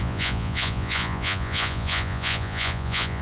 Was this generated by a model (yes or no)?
yes